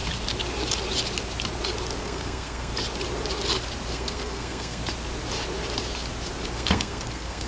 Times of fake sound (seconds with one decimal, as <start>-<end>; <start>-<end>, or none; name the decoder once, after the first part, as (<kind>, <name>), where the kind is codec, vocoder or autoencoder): 2.0-2.7 (codec, SNAC); 3.9-4.8; 6.5-7.5